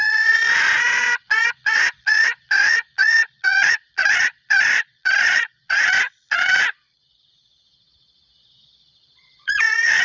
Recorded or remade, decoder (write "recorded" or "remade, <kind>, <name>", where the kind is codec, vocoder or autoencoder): remade, vocoder, Vocos